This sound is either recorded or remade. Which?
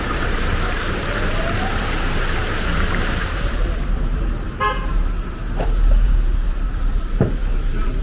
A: remade